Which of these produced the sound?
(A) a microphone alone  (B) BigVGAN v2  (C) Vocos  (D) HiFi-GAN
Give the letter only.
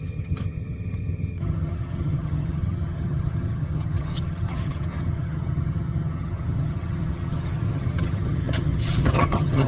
D